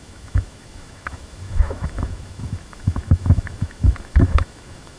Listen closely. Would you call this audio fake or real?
fake